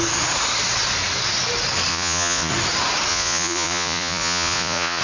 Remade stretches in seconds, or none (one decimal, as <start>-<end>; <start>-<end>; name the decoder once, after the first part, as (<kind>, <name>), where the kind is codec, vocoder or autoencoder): 1.9-2.5 (vocoder, Vocos); 3.1-5.0